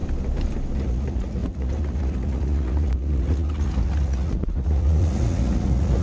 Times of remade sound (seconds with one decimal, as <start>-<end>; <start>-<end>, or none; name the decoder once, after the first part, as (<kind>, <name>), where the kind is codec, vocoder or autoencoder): 0.8-6.0 (vocoder, Vocos)